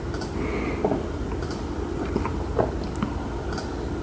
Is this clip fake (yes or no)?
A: no